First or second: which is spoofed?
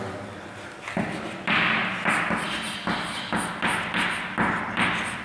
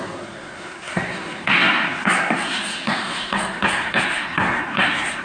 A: second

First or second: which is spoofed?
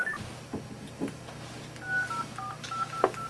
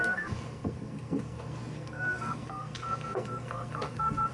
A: second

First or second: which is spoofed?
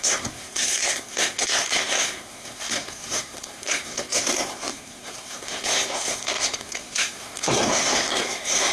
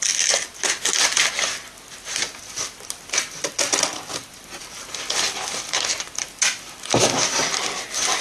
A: first